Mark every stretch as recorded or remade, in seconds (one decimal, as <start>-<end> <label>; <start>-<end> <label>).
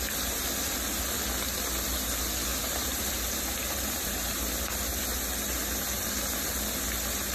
0.0-2.5 recorded; 2.5-4.4 remade; 4.4-7.3 recorded